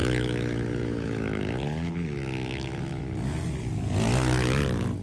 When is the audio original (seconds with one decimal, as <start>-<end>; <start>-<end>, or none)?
3.0-5.0